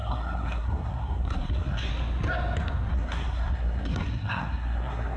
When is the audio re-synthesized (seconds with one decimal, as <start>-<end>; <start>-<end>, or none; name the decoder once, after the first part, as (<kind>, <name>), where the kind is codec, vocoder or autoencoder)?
0.0-1.9 (codec, SNAC); 2.9-5.2